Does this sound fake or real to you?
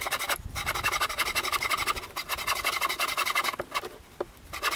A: real